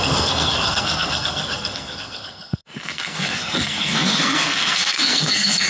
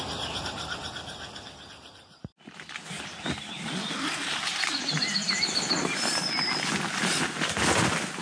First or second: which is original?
second